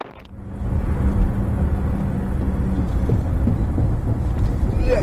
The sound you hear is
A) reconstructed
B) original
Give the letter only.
B